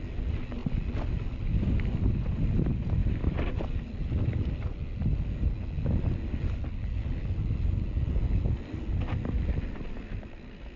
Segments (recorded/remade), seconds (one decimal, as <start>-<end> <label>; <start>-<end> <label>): 0.0-10.8 recorded